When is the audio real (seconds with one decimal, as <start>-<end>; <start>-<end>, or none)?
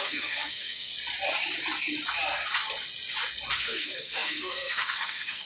0.9-3.6